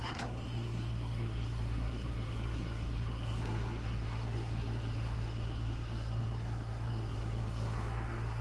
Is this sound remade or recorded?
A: remade